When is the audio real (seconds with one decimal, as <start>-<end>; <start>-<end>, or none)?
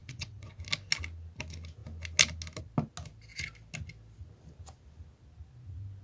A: 0.5-6.0